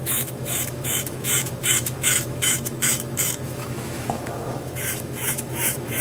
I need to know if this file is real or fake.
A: fake